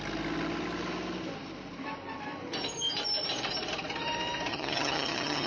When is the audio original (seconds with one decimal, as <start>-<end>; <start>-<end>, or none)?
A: 0.0-4.5